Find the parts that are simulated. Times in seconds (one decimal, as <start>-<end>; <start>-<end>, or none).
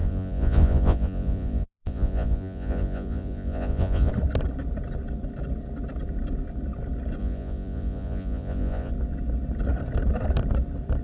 0.0-4.1; 7.2-8.9